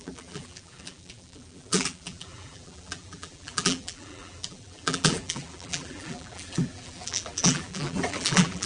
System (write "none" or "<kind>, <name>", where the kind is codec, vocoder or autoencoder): vocoder, BigVGAN v2